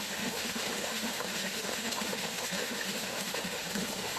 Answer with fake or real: fake